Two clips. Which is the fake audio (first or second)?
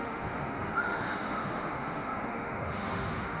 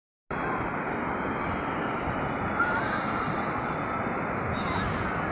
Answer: first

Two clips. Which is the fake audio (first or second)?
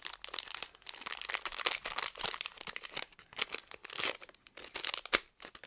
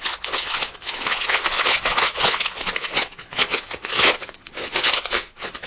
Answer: second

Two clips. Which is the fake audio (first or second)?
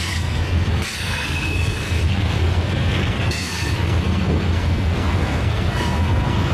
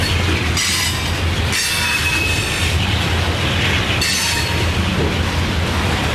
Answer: first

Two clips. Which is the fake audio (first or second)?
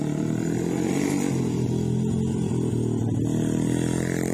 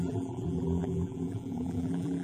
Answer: second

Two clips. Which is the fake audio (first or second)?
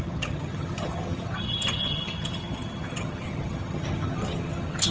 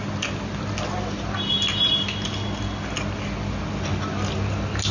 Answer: first